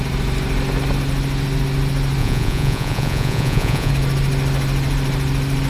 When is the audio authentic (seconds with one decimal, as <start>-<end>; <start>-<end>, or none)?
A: 0.0-2.2; 3.9-5.7